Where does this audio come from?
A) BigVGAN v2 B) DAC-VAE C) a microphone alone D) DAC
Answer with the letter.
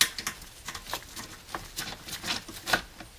C